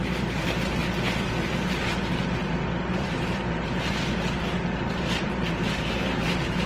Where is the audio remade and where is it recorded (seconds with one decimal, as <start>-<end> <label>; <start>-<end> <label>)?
0.0-0.8 remade; 0.8-1.5 recorded; 1.5-6.7 remade